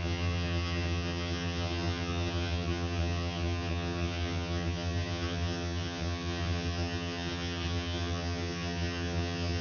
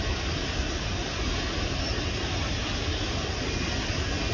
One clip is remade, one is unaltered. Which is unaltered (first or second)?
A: second